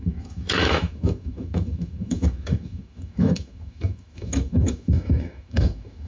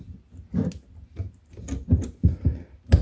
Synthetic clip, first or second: first